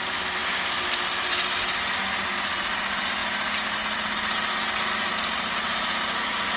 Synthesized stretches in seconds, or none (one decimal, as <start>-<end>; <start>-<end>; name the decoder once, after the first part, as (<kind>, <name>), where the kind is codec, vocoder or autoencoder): none